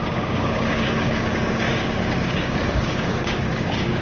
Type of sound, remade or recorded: remade